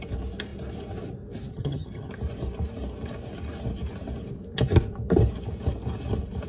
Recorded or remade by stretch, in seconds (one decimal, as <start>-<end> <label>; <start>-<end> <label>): 0.0-1.5 recorded; 1.5-2.1 remade; 2.1-6.5 recorded